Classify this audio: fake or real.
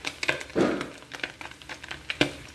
real